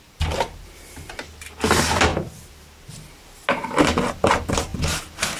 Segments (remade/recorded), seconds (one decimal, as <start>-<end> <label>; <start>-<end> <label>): 0.0-5.4 recorded